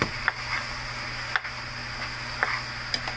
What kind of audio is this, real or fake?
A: real